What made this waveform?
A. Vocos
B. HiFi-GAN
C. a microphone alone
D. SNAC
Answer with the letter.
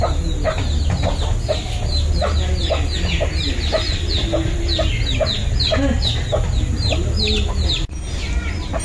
C